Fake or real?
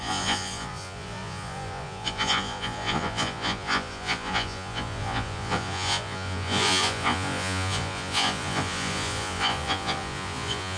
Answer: fake